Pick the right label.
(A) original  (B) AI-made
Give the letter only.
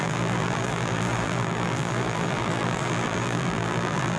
B